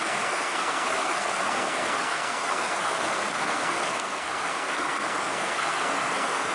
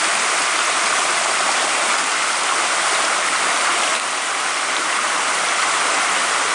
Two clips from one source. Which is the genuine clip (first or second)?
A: second